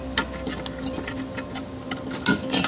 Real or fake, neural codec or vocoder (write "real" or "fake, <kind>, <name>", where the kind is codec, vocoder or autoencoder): real